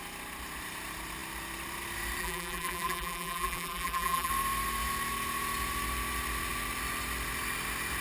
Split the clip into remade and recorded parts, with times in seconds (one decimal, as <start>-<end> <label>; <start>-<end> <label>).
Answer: 0.0-2.2 recorded; 2.2-4.3 remade; 4.3-8.0 recorded